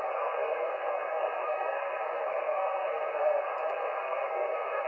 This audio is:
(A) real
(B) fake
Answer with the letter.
B